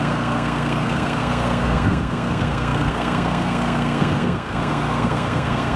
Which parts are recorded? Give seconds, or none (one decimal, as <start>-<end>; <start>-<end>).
none